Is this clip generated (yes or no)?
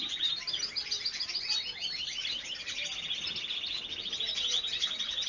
no